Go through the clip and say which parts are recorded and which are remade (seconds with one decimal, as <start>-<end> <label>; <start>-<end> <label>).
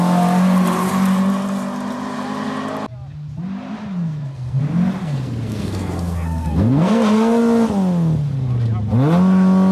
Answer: 0.0-4.0 recorded; 4.0-4.6 remade; 4.6-5.0 recorded; 5.0-7.4 remade; 7.4-9.7 recorded